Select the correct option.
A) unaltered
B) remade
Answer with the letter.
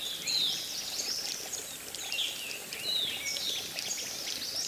A